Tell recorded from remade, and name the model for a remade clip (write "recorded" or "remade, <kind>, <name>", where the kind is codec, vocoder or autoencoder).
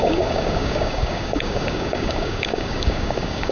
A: remade, codec, DAC